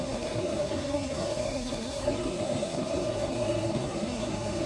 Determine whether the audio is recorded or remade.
remade